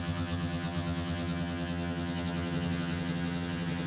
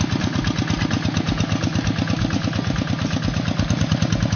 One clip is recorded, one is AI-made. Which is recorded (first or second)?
second